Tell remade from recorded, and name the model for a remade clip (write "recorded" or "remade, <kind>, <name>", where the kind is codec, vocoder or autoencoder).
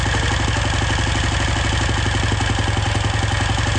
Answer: recorded